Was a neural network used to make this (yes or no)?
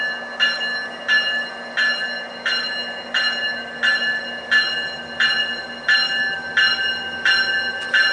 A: no